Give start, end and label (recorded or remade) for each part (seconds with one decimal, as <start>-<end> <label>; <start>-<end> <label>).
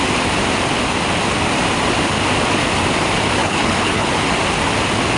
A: 0.0-3.4 recorded; 3.4-4.1 remade; 4.1-5.2 recorded